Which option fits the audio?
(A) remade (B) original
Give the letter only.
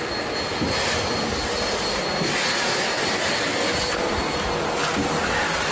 B